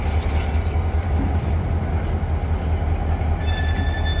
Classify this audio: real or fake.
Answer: real